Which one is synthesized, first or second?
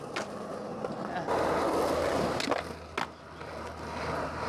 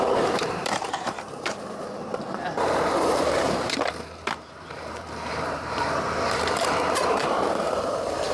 second